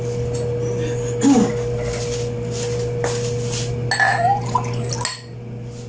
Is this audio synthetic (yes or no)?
no